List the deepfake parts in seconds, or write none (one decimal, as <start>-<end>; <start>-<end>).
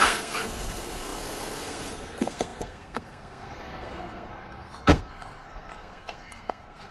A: 0.0-6.9